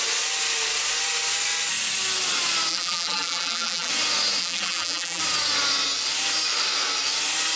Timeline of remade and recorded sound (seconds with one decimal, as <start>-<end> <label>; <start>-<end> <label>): 0.0-2.7 recorded; 2.7-3.9 remade; 3.9-4.4 recorded; 4.4-5.2 remade; 5.2-7.6 recorded